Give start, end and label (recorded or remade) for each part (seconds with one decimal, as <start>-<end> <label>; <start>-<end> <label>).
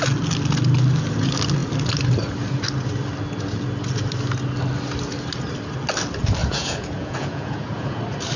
0.0-6.4 recorded; 6.4-8.0 remade; 8.0-8.4 recorded